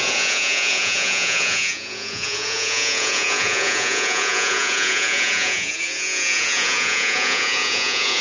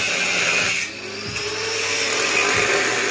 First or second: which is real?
second